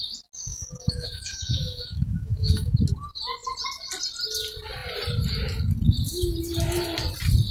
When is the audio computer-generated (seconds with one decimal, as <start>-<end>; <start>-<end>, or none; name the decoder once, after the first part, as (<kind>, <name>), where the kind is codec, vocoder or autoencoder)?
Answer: 0.5-2.7 (autoencoder, DAC-VAE)

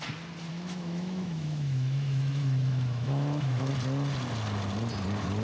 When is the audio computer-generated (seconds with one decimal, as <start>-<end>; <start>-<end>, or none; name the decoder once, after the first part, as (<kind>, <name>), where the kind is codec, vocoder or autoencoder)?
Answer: 0.5-3.7 (autoencoder, DAC-VAE)

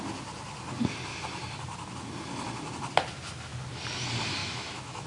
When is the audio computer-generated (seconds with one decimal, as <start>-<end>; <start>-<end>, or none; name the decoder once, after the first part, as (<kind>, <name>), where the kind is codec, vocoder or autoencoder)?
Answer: 4.4-5.1 (autoencoder, DAC-VAE)

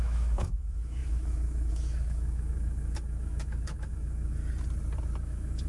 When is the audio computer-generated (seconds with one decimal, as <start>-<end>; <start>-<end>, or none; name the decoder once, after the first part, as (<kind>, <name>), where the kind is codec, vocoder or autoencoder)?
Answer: 0.0-4.4 (autoencoder, DAC-VAE); 5.2-5.7